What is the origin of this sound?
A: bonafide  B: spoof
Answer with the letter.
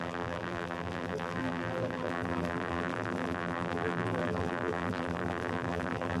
B